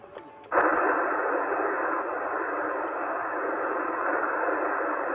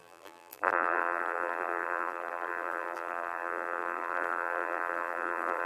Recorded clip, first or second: first